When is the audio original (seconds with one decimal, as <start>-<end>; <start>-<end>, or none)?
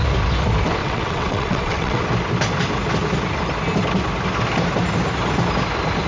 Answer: 0.0-0.8; 2.0-6.1